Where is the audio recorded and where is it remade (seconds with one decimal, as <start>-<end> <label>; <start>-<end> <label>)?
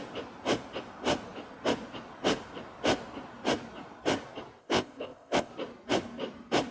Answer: 0.0-4.6 recorded; 4.6-5.5 remade; 5.5-6.7 recorded